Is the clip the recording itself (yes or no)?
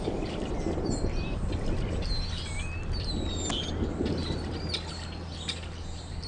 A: yes